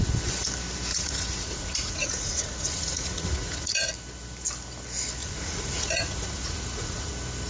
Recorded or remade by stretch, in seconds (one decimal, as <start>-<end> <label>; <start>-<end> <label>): 0.0-0.9 recorded; 0.9-3.9 remade; 3.9-5.2 recorded; 5.2-7.1 remade; 7.1-7.5 recorded